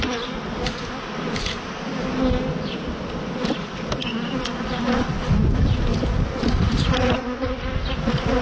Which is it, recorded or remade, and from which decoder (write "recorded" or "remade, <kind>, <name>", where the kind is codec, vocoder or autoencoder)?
recorded